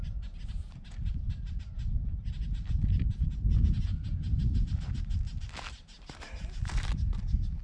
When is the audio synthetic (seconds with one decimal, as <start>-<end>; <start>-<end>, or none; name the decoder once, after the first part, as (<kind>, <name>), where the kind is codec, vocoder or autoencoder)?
none